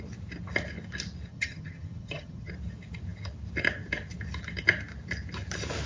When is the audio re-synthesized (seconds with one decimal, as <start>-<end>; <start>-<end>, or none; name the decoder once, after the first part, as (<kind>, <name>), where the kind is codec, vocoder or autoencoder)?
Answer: 1.3-2.5 (vocoder, HiFi-GAN)